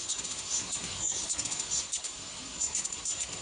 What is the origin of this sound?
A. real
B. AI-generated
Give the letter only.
B